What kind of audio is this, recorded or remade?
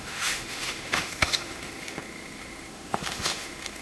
remade